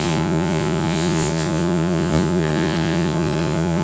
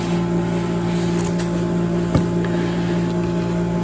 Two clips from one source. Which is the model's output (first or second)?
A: first